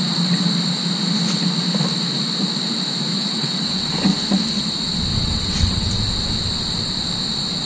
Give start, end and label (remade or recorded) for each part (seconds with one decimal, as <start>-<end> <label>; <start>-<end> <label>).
0.0-3.1 recorded; 3.1-3.9 remade; 3.9-5.1 recorded; 5.1-5.9 remade; 5.9-7.7 recorded